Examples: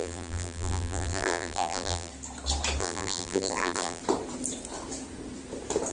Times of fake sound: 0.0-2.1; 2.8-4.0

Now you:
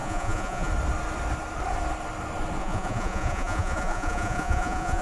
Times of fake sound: 0.0-0.7; 2.6-5.0

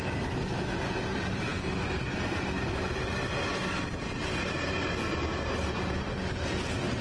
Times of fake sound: none